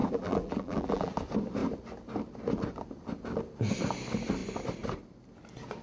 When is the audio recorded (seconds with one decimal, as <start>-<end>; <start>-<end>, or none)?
1.1-5.8